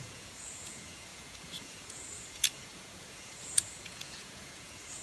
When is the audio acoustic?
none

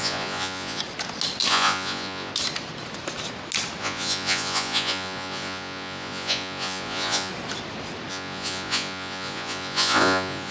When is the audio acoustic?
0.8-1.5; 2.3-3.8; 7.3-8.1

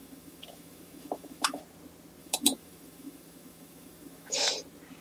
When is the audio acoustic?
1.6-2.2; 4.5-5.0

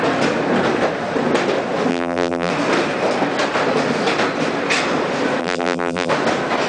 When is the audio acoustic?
0.0-1.9; 2.5-5.4; 6.1-6.7